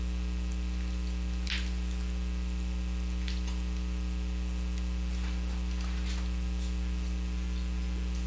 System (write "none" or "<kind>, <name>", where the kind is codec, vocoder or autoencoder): none